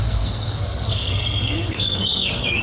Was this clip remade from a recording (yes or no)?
yes